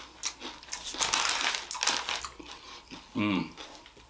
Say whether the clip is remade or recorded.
recorded